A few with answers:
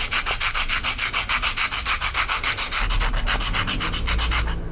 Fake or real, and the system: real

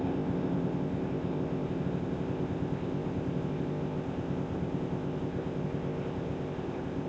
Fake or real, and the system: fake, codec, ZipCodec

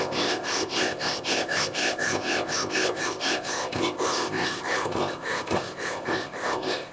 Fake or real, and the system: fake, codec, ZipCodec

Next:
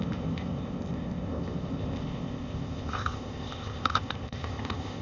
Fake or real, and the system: fake, codec, ZipCodec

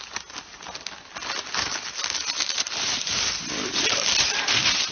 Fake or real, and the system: real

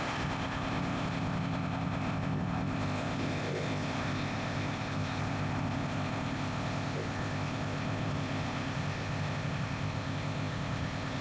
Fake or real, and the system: fake, codec, ZipCodec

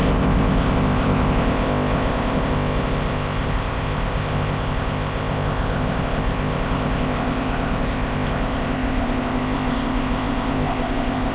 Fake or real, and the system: fake, codec, ZipCodec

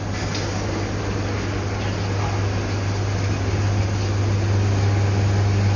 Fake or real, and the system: real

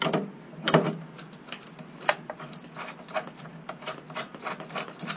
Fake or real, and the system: real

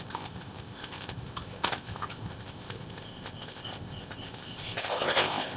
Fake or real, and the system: fake, codec, ZipCodec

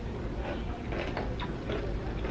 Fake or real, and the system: real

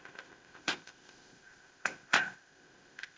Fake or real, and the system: fake, codec, ZipCodec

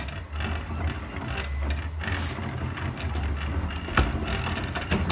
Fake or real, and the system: real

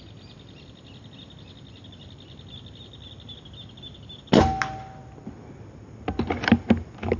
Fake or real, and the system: real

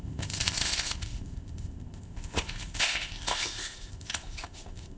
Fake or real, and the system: fake, codec, ZipCodec